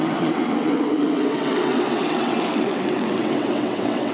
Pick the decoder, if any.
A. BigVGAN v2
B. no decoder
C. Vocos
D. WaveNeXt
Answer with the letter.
D